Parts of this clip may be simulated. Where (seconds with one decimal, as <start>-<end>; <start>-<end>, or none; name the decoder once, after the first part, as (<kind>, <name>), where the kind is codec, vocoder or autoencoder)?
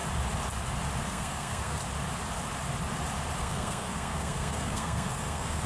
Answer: 1.1-1.8 (codec, SNAC); 3.4-5.7